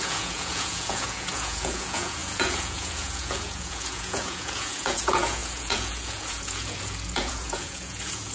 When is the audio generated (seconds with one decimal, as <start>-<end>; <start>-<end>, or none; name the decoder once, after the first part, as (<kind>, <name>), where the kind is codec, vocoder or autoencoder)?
0.0-8.3 (vocoder, Vocos)